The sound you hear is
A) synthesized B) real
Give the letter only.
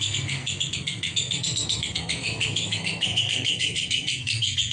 A